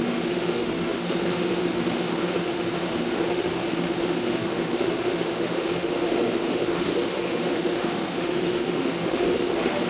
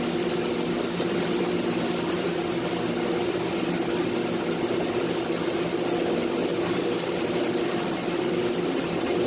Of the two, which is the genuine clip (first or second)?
second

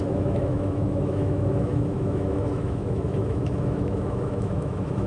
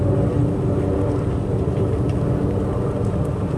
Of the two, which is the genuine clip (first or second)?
second